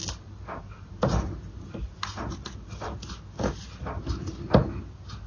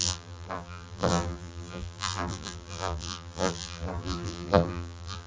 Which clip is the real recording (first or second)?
first